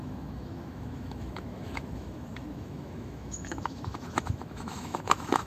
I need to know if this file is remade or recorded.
remade